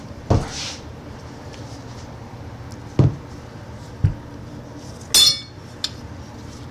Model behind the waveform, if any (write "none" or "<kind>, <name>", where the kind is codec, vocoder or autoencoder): none